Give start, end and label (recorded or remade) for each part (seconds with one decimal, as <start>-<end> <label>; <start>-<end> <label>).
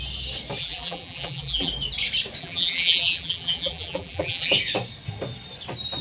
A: 0.0-0.6 recorded; 0.6-1.7 remade; 1.7-2.4 recorded; 2.4-4.5 remade; 4.5-6.0 recorded